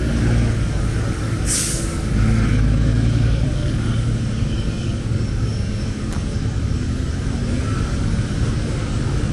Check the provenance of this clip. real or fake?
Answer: fake